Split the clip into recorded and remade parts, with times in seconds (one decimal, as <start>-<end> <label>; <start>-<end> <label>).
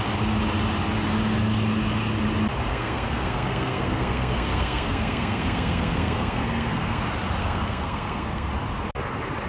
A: 0.0-2.7 recorded; 2.7-7.0 remade; 7.0-7.4 recorded; 7.4-8.5 remade; 8.5-9.5 recorded